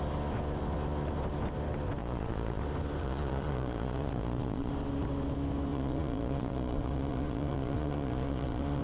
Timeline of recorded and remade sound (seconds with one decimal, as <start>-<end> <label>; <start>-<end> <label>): 0.0-2.0 recorded; 2.0-2.6 remade; 2.6-3.0 recorded; 3.0-4.7 remade; 4.7-5.7 recorded; 5.7-8.8 remade